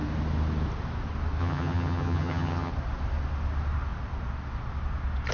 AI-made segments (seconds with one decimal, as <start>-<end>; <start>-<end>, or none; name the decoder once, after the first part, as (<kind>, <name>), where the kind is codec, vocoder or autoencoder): 1.4-2.7 (vocoder, HiFi-GAN)